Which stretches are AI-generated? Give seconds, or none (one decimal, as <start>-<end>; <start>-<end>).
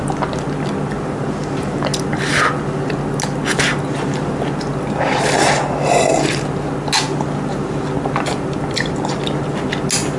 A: none